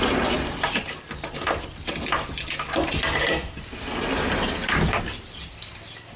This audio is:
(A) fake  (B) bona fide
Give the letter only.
B